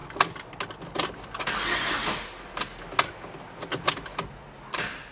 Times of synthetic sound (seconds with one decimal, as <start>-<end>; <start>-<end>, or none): none